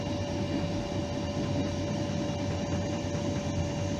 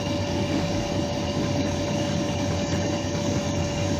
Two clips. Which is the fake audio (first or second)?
second